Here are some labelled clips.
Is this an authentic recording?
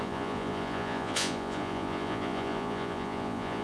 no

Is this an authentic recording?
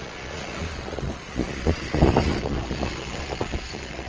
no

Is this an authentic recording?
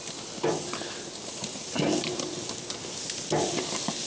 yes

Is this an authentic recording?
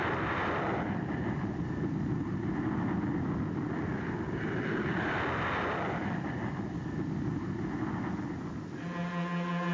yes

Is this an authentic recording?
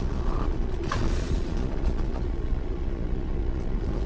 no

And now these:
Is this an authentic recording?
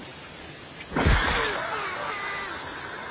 yes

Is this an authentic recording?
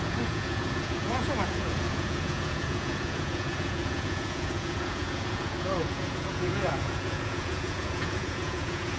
no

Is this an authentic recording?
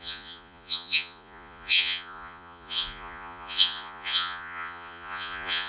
no